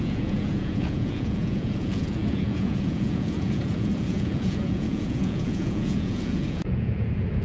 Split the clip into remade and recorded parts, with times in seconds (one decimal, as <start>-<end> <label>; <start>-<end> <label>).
0.0-7.4 remade